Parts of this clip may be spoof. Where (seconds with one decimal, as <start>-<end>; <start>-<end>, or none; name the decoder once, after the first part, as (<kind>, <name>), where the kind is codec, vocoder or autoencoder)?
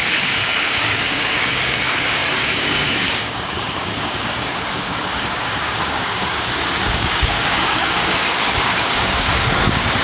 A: 0.0-10.0 (codec, DAC)